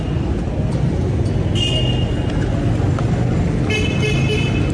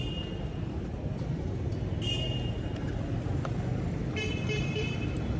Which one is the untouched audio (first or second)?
first